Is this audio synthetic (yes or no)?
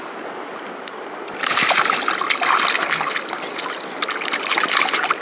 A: no